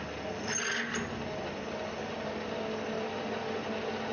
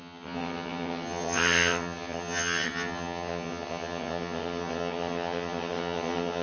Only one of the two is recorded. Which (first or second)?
first